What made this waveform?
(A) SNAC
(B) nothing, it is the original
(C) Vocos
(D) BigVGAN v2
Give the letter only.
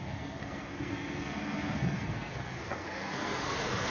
A